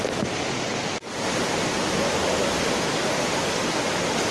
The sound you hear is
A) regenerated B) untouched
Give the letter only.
B